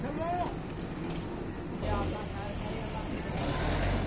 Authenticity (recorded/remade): recorded